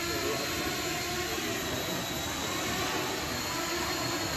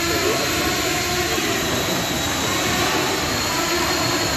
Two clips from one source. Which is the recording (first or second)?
first